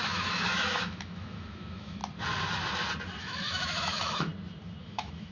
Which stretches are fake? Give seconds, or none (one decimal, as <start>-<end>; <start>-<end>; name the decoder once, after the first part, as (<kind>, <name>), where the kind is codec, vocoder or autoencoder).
0.0-2.0 (autoencoder, DAC-VAE); 3.2-4.3; 4.8-5.3